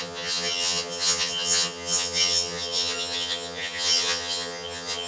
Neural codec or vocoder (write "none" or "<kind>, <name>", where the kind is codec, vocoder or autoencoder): vocoder, HiFi-GAN